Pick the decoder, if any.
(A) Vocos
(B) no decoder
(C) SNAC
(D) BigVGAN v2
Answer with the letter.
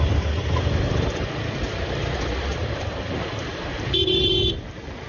D